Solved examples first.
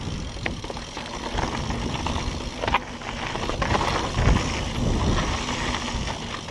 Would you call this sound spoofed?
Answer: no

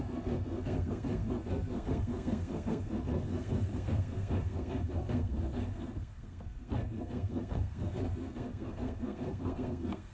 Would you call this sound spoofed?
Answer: yes